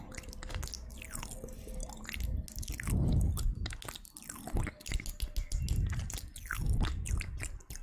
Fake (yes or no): no